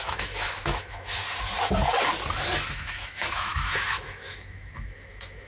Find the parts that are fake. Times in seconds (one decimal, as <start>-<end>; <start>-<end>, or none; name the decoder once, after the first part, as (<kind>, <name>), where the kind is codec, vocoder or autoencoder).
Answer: 0.0-1.2 (autoencoder, DAC-VAE); 2.7-5.5